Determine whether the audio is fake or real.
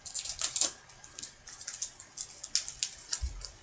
real